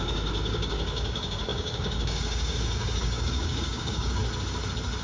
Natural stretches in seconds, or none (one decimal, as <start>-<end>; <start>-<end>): 4.2-5.0

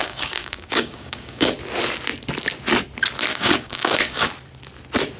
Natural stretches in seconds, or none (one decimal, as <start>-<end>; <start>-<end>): 1.5-3.3; 4.3-5.2

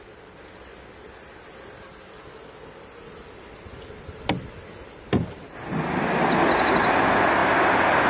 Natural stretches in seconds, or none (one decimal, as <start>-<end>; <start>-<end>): 0.0-8.1

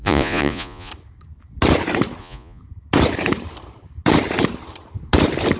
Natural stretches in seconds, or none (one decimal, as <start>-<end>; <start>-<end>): 0.9-2.2; 2.6-5.6

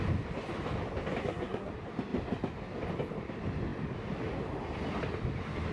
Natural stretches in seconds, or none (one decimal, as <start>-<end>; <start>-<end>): 0.0-1.2; 1.7-5.7